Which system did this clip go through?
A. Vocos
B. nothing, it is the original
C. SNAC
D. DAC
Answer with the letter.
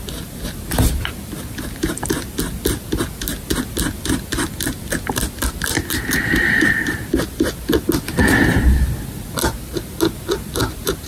B